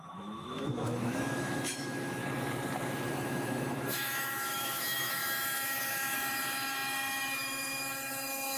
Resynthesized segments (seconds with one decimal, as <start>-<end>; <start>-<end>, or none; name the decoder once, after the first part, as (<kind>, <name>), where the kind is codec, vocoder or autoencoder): 0.0-2.2 (autoencoder, DAC-VAE); 3.1-8.6